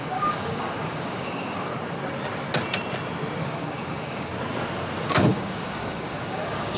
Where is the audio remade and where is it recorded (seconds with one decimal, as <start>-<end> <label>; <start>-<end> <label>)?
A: 0.0-1.7 remade; 1.7-3.4 recorded; 3.4-4.3 remade; 4.3-5.1 recorded; 5.1-6.8 remade